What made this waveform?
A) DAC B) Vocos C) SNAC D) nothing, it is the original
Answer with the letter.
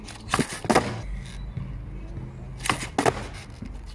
D